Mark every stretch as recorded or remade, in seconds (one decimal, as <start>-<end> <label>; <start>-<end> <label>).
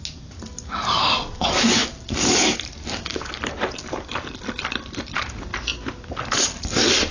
0.0-7.1 recorded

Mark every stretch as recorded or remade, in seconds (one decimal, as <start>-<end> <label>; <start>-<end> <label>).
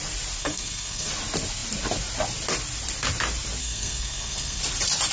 0.0-0.4 recorded; 0.4-1.1 remade; 1.1-3.6 recorded; 3.6-4.6 remade; 4.6-5.1 recorded